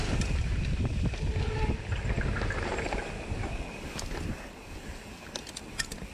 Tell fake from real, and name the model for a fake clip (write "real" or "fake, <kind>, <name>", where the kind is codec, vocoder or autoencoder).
real